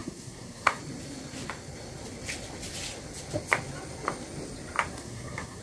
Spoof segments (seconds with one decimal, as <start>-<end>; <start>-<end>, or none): 0.0-0.8; 4.9-5.6